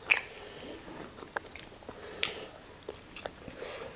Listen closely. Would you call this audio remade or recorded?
recorded